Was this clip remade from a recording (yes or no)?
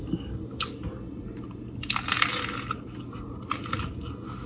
no